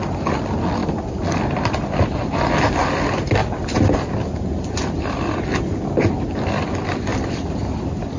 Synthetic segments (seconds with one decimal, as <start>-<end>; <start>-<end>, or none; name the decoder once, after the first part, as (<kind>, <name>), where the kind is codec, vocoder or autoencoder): 0.8-2.5 (vocoder, BigVGAN v2); 7.1-8.2